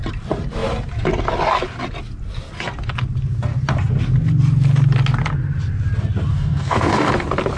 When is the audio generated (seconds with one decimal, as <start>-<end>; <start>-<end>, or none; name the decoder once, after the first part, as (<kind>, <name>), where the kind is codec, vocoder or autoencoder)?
6.3-7.1 (codec, DAC)